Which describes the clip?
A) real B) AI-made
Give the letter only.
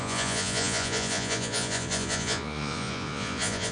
B